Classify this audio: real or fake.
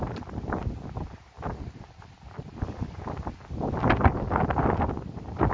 real